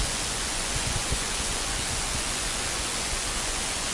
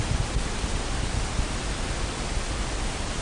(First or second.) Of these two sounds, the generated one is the first